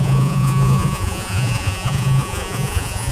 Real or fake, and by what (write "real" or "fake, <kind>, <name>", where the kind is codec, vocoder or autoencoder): fake, vocoder, Vocos